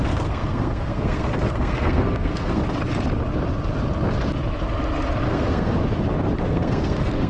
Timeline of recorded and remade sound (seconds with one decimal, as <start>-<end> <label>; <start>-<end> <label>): 0.0-2.6 remade; 2.6-5.3 recorded; 5.3-5.8 remade; 5.8-6.4 recorded; 6.4-7.3 remade